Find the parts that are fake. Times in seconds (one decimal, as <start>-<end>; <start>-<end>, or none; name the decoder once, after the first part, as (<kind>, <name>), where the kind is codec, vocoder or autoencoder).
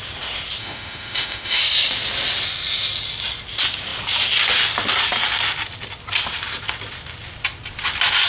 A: 0.6-1.6 (autoencoder, DAC-VAE)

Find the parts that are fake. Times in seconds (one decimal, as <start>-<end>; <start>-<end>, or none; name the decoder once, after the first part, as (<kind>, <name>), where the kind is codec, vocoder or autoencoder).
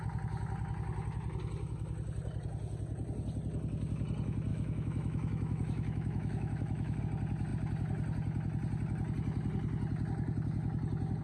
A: 4.5-7.0 (autoencoder, DAC-VAE)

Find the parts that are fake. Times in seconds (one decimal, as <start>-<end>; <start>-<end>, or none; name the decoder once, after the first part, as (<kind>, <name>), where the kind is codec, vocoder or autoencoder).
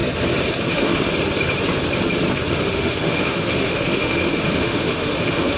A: 0.6-1.1 (autoencoder, DAC-VAE); 2.5-5.6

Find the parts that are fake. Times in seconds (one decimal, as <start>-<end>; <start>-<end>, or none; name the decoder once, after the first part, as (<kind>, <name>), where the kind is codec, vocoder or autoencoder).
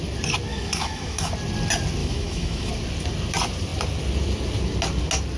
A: 0.5-1.3 (autoencoder, DAC-VAE); 2.0-2.7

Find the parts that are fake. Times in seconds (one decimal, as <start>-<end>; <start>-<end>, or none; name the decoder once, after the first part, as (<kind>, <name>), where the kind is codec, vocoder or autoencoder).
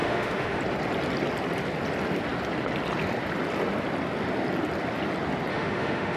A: 0.0-0.6 (autoencoder, DAC-VAE); 5.5-6.2